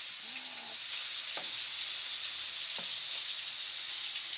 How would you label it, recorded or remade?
recorded